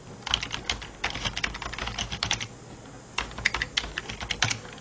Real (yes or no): yes